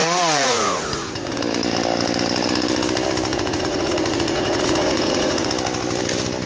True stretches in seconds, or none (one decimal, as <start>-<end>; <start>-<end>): 1.4-3.3; 5.5-6.5

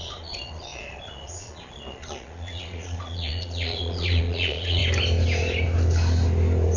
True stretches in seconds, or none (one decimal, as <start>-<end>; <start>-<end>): 4.8-6.8

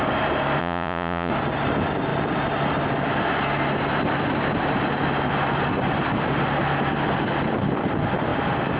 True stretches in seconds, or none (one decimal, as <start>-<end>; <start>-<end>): 0.0-0.6; 1.3-8.8

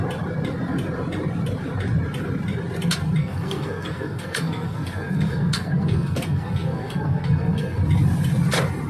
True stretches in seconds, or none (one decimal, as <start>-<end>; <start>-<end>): 0.0-3.2; 7.8-8.9

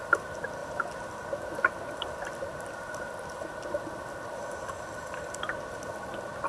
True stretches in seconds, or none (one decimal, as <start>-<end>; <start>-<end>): 0.0-6.5

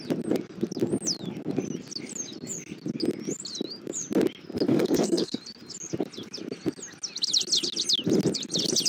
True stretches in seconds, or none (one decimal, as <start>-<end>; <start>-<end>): 0.0-4.7; 5.4-8.9

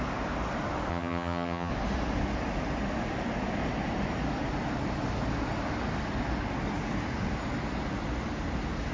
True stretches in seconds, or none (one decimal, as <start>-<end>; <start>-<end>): 0.0-0.9; 1.7-8.9